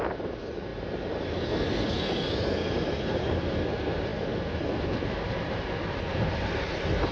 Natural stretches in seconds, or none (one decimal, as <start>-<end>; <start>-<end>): 0.0-7.1